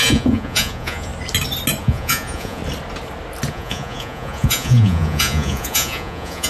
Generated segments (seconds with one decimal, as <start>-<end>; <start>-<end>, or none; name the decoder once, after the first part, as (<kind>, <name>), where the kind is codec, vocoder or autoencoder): 0.0-1.1 (vocoder, Vocos); 1.8-2.6; 3.5-6.5